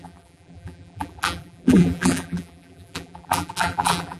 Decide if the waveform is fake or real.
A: fake